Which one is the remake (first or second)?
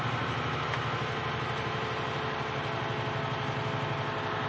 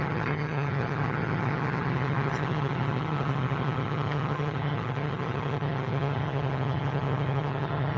second